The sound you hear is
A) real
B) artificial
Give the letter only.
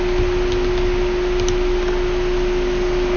A